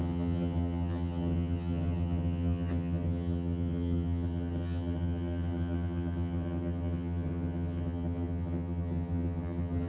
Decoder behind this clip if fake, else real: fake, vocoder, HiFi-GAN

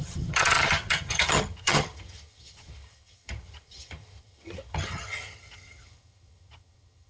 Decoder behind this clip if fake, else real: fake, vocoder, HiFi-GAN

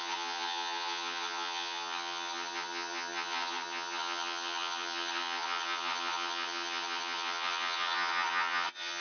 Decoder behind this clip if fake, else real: fake, vocoder, HiFi-GAN